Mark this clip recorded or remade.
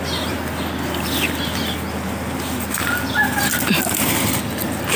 recorded